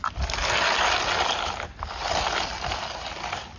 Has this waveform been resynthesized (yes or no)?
no